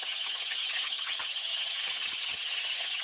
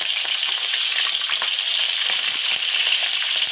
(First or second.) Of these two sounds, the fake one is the first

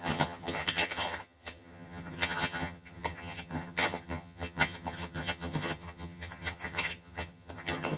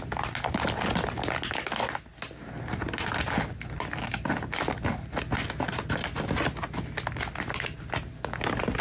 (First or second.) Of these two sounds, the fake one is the first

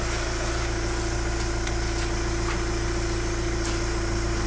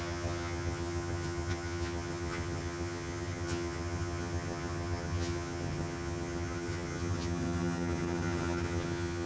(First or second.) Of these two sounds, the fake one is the second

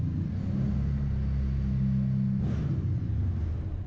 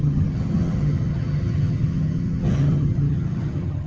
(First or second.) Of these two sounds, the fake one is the second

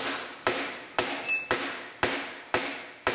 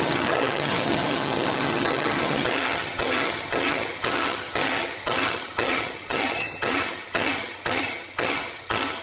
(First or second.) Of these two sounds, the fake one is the second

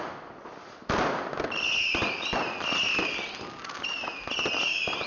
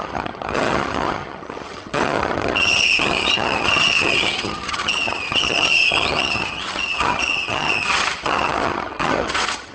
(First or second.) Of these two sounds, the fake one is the second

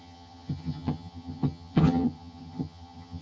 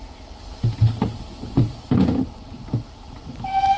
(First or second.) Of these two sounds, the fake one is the first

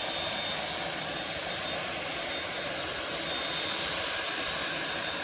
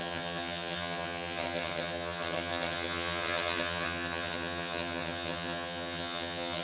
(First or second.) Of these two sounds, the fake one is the second